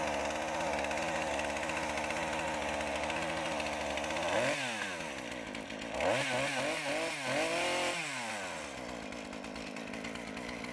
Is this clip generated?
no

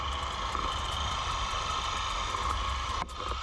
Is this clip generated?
no